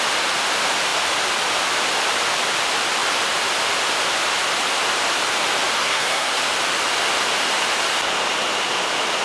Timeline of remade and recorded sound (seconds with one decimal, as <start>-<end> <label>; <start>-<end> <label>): 0.0-5.8 recorded; 5.8-6.4 remade; 6.4-9.2 recorded